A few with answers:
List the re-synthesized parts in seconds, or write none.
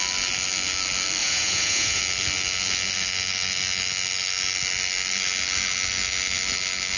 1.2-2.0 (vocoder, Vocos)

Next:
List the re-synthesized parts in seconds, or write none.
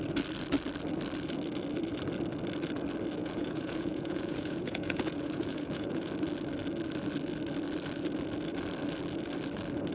3.2-6.1 (vocoder, Vocos)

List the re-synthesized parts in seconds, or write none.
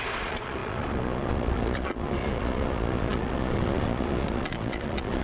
0.0-5.2 (vocoder, Vocos)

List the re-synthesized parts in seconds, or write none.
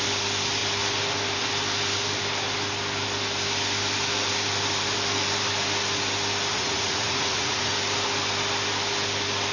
6.5-7.7 (vocoder, Vocos)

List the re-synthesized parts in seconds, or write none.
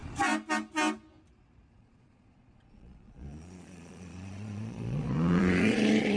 1.7-6.2 (vocoder, Vocos)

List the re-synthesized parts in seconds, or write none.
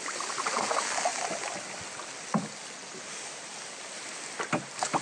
none